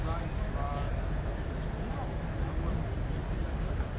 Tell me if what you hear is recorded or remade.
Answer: recorded